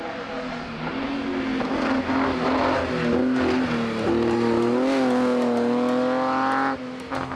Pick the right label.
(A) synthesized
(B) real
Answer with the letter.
B